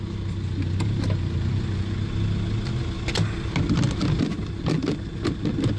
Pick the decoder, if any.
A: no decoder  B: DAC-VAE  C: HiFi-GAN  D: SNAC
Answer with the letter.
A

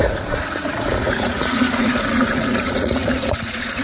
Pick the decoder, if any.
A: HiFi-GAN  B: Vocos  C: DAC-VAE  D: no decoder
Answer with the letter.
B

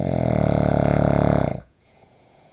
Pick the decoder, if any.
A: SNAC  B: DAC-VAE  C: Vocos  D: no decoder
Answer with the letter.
C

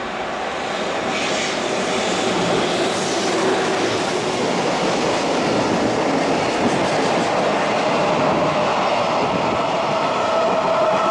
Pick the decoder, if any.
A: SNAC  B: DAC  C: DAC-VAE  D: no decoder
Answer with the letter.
D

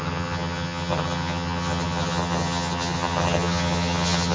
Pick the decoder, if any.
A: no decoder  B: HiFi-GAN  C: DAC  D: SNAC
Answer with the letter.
B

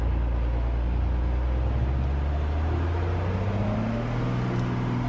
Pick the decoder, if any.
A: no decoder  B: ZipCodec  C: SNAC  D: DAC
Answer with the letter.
A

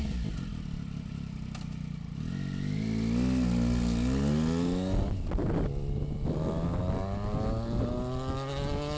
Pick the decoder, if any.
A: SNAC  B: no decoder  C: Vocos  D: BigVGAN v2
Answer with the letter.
B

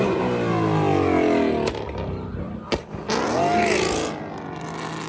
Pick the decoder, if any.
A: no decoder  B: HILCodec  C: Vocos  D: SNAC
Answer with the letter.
A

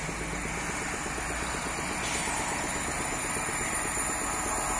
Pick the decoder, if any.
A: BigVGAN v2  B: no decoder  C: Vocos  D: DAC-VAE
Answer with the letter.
B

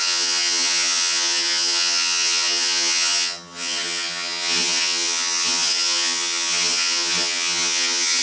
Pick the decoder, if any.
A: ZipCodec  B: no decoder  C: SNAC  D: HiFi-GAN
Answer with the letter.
D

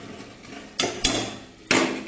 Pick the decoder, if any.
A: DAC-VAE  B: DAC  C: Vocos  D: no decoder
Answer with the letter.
D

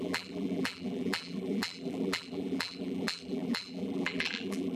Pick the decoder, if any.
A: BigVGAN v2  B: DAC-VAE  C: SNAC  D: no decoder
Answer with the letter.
A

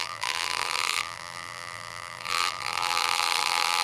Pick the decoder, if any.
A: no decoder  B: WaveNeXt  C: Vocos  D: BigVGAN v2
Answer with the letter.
D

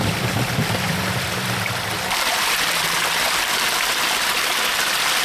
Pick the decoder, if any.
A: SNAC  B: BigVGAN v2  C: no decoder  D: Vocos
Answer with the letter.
B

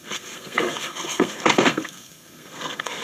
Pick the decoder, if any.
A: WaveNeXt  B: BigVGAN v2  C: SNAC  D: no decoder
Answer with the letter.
C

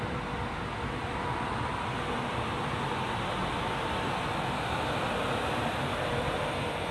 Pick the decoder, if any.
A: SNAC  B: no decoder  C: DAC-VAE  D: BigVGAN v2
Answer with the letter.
B